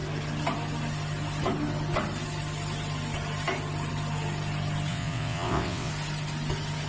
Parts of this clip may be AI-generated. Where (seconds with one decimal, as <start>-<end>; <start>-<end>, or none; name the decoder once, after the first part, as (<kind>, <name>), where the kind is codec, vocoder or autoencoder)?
4.9-5.9 (vocoder, WaveNeXt)